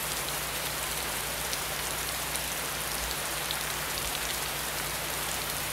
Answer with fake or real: fake